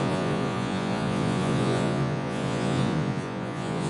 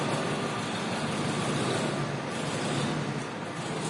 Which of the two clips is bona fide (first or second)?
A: second